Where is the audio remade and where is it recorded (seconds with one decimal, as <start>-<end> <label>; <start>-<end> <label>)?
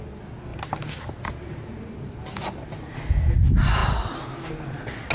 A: 0.0-5.1 recorded